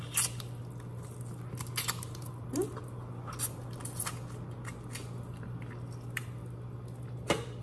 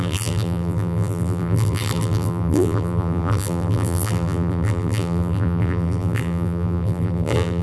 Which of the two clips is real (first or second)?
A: first